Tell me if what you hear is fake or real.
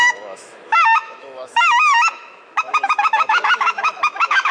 fake